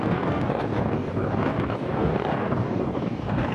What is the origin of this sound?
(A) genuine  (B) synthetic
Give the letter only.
B